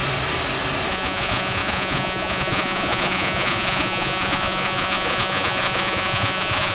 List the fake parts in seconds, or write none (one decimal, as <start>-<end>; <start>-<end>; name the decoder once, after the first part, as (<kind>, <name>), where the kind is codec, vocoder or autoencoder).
0.9-6.7 (vocoder, Vocos)